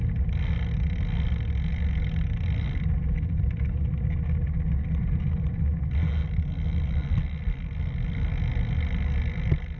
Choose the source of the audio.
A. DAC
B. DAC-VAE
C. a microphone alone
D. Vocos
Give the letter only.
C